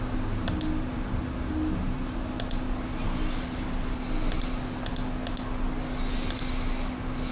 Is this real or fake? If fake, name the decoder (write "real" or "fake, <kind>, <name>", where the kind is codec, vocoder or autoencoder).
real